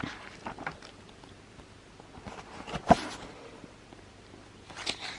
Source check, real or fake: real